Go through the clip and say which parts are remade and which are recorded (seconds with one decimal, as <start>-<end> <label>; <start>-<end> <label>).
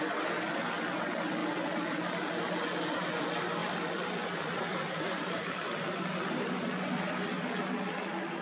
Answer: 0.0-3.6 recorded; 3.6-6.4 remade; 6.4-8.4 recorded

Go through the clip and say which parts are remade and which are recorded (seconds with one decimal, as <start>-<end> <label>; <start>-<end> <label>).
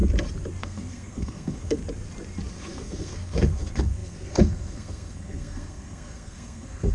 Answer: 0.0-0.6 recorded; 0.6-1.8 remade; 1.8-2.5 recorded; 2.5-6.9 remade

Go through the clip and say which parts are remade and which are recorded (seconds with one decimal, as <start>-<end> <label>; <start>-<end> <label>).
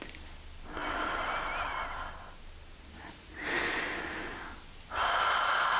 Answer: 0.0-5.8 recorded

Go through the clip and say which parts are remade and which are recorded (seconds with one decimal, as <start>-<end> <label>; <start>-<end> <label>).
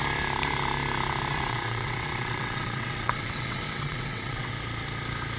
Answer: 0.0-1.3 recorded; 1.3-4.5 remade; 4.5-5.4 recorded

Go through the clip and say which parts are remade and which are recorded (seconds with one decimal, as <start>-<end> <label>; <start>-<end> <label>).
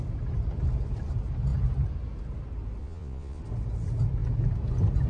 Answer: 0.0-2.8 recorded; 2.8-3.4 remade; 3.4-5.1 recorded